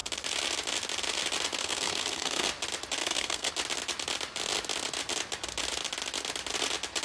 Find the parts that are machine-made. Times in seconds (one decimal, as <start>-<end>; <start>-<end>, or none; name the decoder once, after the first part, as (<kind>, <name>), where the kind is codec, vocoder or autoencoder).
1.6-2.5 (codec, SNAC); 3.0-3.5